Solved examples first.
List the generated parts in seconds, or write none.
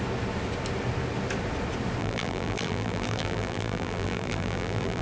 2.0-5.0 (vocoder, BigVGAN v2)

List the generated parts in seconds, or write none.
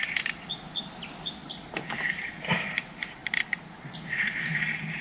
1.4-2.8 (vocoder, BigVGAN v2)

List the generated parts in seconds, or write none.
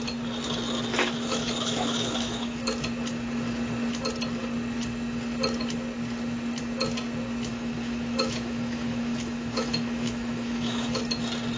0.9-2.6 (autoencoder, DAC-VAE); 7.5-11.0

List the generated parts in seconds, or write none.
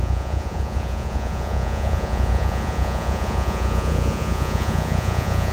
0.0-5.5 (vocoder, Vocos)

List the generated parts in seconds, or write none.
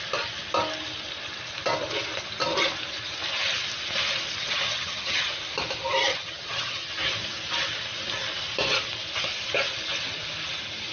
4.4-5.3 (vocoder, HiFi-GAN); 6.1-6.9